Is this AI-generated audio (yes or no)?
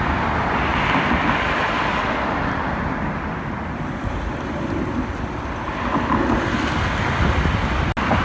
no